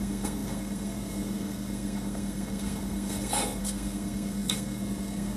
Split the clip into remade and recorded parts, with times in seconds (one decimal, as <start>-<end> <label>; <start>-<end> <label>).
0.0-5.4 remade